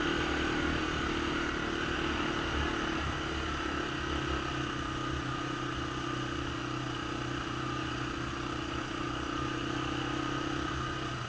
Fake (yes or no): no